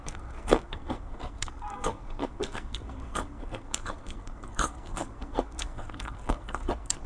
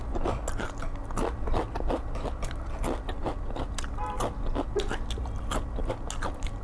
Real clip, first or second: second